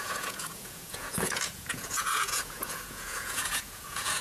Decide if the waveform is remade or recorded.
remade